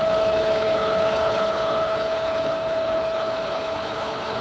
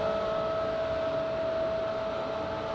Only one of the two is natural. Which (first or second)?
second